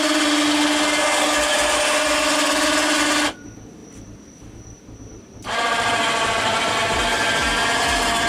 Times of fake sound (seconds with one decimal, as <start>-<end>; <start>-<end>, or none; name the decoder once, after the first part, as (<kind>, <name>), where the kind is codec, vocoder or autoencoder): 3.8-6.7 (vocoder, BigVGAN v2)